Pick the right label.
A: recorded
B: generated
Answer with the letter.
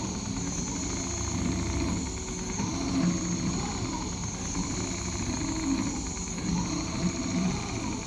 A